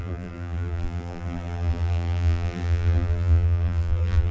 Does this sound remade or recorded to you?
remade